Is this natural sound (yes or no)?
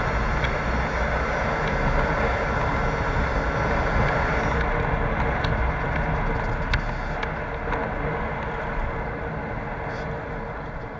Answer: yes